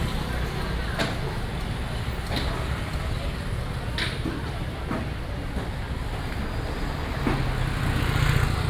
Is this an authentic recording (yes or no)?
yes